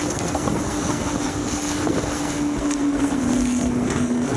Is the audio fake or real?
fake